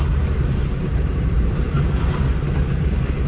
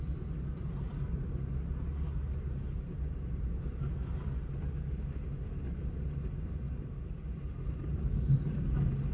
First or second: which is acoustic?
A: second